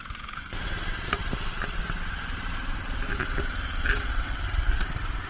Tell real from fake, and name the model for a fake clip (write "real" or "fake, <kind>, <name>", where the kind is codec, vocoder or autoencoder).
fake, vocoder, BigVGAN v2